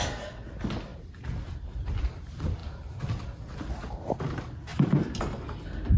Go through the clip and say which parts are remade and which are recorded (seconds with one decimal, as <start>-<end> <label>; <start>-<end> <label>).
0.0-4.7 recorded; 4.7-5.2 remade; 5.2-6.0 recorded